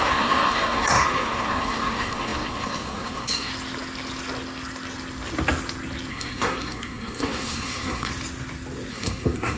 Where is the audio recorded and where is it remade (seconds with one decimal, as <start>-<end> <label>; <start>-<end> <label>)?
0.0-3.5 remade; 3.5-6.1 recorded; 6.1-8.1 remade; 8.1-8.9 recorded; 8.9-9.6 remade